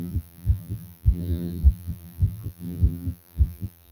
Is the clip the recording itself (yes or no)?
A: no